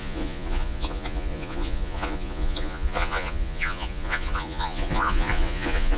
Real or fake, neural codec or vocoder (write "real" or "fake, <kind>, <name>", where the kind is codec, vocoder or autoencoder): fake, vocoder, Vocos